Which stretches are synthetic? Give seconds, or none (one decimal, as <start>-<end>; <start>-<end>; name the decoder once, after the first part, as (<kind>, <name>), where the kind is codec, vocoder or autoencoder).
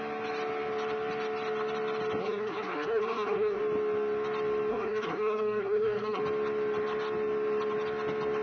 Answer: 2.2-3.6 (codec, SNAC); 4.7-6.2